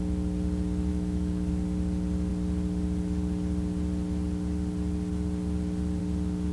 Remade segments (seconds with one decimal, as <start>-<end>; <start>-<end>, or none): 0.9-1.5